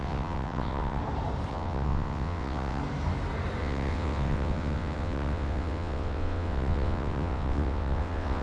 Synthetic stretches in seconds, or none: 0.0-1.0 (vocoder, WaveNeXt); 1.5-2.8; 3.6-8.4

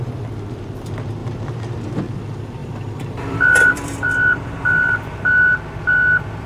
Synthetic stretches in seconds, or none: 1.2-2.0 (vocoder, BigVGAN v2); 2.6-5.0

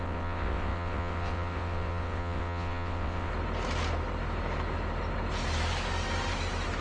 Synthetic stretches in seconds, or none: 0.0-3.3 (vocoder, WaveNeXt)

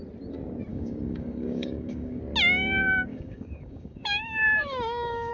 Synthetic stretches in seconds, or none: 0.7-2.2 (codec, DAC); 3.1-5.3

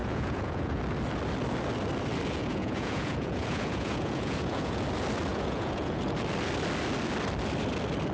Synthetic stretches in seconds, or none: 0.0-0.8 (vocoder, Vocos); 2.4-4.8; 5.3-6.0

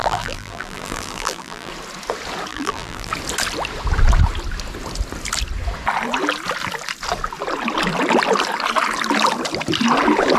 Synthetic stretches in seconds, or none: 0.0-1.7 (vocoder, BigVGAN v2); 2.5-3.1